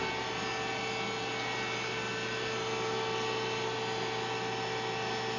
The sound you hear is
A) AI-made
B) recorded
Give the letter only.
B